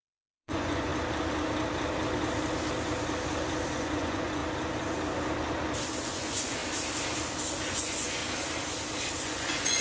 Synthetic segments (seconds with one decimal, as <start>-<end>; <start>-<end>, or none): 0.0-0.9; 3.7-4.4; 6.0-6.6; 7.7-8.2; 9.2-9.8